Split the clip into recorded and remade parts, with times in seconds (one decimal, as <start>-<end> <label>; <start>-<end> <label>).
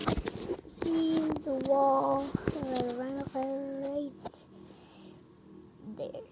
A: 0.0-6.3 recorded